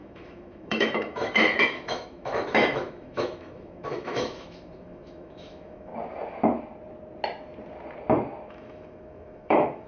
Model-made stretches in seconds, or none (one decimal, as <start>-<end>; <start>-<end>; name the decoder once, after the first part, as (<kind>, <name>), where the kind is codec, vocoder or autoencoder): 0.0-5.9 (autoencoder, DAC-VAE); 8.5-9.9